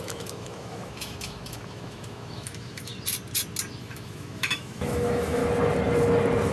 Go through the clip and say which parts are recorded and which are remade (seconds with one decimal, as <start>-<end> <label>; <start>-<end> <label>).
0.0-2.9 remade; 2.9-3.8 recorded; 3.8-5.4 remade; 5.4-6.5 recorded